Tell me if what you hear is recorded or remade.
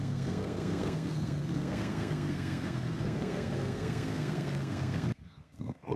remade